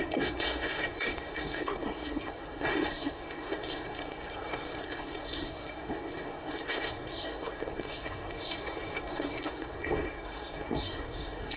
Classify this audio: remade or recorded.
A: remade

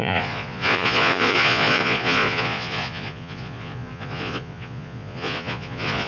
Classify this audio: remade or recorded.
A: remade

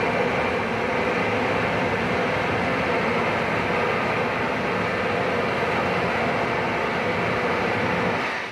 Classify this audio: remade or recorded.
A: recorded